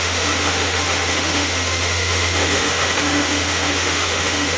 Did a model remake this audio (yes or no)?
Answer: yes